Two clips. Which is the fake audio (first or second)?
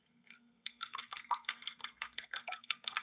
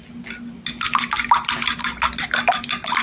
first